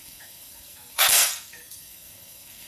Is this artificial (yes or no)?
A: yes